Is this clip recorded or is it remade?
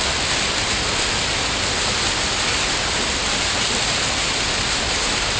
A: recorded